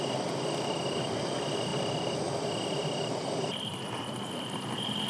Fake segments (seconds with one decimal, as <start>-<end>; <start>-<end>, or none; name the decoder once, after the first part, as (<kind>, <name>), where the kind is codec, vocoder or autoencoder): none